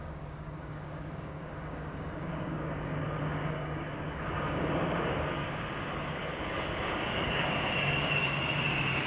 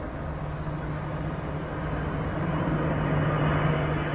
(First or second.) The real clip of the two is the second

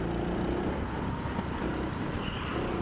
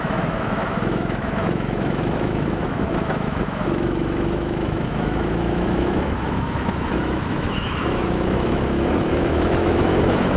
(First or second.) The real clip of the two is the first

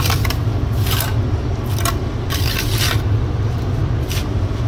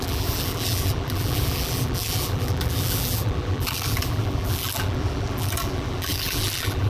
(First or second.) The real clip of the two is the first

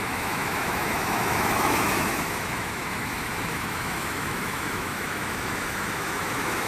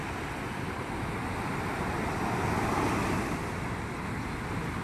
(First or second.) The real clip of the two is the second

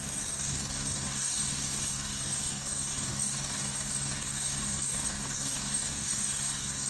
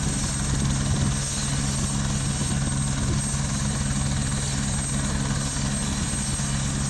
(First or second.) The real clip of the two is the second